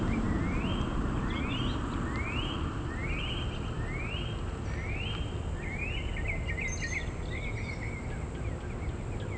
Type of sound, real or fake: real